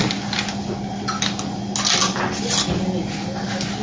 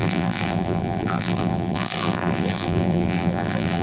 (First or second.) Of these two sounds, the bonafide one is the first